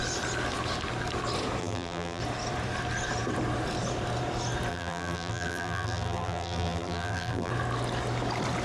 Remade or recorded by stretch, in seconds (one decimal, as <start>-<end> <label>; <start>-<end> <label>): 0.0-1.6 recorded; 1.6-2.2 remade; 2.2-4.7 recorded; 4.7-7.5 remade; 7.5-8.6 recorded